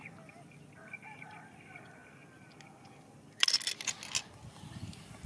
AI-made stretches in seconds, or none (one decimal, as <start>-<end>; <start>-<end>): none